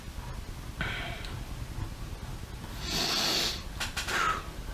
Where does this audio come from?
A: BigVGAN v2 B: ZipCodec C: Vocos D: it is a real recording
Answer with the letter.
D